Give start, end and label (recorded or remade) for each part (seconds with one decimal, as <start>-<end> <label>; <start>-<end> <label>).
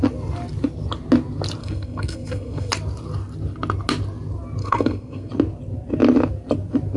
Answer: 0.0-1.6 recorded; 1.6-2.7 remade; 2.7-4.6 recorded; 4.6-5.3 remade; 5.3-7.0 recorded